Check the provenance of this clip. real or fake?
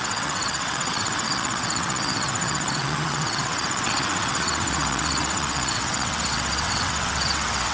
fake